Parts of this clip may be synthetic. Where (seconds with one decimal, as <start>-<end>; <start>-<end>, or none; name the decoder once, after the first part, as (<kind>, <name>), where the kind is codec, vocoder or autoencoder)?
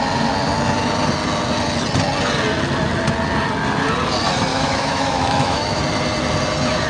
4.5-5.8 (autoencoder, DAC-VAE)